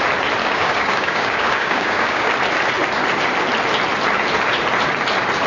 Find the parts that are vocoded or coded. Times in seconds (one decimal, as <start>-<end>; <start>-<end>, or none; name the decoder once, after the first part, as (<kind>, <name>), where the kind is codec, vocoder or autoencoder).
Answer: 0.4-2.3 (codec, DAC)